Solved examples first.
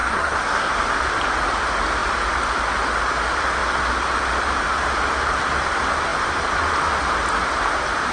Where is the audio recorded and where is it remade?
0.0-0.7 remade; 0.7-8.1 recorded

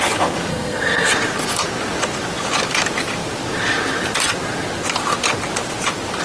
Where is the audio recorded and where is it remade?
0.0-0.5 recorded; 0.5-1.1 remade; 1.1-6.2 recorded

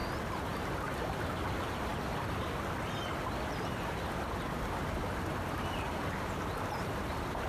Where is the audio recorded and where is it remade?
0.0-7.5 recorded

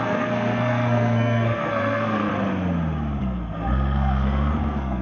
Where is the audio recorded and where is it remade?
0.0-2.3 remade; 2.3-3.2 recorded; 3.2-5.0 remade